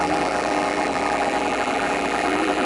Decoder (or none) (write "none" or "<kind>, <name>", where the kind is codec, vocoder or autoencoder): vocoder, BigVGAN v2